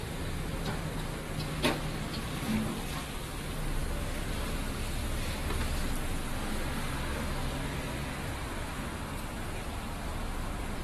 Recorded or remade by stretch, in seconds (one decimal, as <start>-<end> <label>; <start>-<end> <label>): 0.0-3.8 recorded; 3.8-4.3 remade; 4.3-10.8 recorded